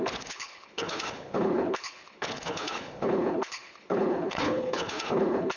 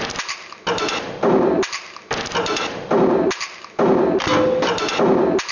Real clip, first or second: second